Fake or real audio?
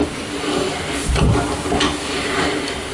real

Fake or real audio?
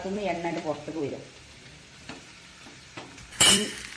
fake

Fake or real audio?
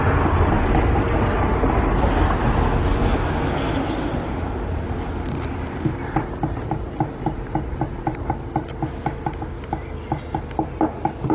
real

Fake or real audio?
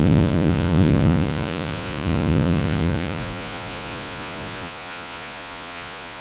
fake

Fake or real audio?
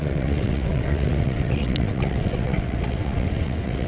fake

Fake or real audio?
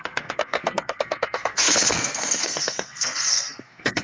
fake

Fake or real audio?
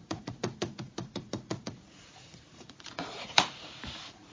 fake